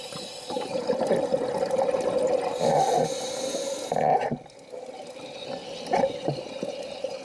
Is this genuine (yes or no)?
yes